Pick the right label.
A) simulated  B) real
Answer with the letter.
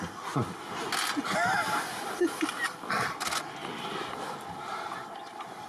B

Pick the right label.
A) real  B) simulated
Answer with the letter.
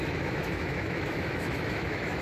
B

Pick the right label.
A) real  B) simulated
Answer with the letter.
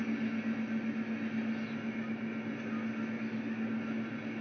A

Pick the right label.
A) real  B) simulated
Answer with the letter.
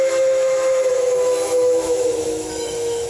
B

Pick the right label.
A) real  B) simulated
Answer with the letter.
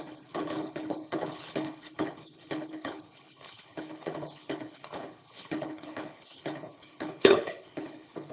B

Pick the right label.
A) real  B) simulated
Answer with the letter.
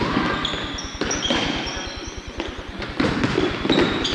A